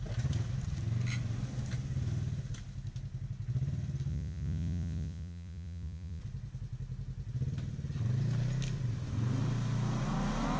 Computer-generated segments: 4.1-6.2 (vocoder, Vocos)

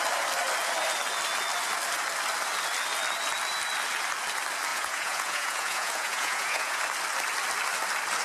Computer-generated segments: 4.7-6.8 (vocoder, Vocos)